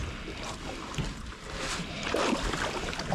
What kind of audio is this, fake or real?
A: real